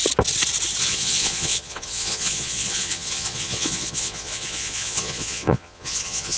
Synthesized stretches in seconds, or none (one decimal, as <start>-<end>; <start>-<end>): 0.8-6.4